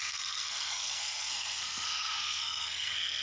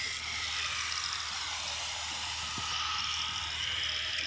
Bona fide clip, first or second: second